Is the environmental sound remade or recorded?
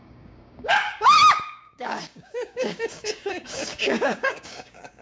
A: remade